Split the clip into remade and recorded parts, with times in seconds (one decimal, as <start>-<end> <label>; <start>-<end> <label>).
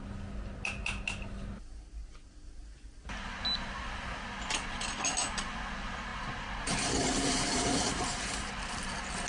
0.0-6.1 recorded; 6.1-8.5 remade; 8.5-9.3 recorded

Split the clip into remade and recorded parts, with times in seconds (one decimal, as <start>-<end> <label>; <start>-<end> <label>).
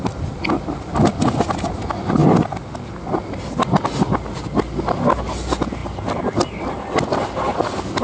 0.0-8.0 recorded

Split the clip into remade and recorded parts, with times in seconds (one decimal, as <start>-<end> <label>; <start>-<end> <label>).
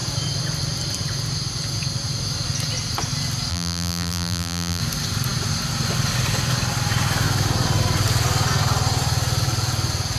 0.0-3.5 recorded; 3.5-4.8 remade; 4.8-10.2 recorded